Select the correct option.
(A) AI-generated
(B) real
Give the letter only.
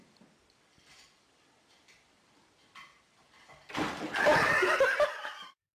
A